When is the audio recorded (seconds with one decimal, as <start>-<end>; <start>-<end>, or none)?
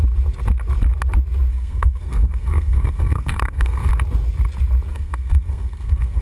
0.0-1.5; 3.9-4.9